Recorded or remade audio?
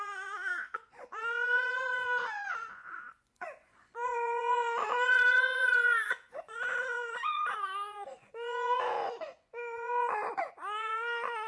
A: remade